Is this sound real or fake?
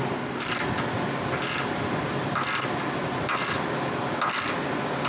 real